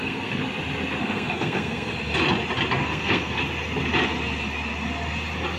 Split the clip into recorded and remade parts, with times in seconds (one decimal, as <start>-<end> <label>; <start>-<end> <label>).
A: 0.0-0.4 remade; 0.4-1.0 recorded; 1.0-1.9 remade; 1.9-2.8 recorded; 2.8-3.4 remade; 3.4-5.6 recorded